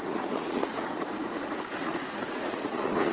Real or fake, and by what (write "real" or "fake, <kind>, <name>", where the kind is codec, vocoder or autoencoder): fake, vocoder, Vocos